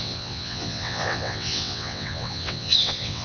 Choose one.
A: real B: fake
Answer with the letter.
B